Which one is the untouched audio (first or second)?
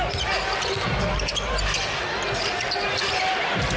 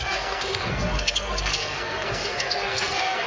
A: first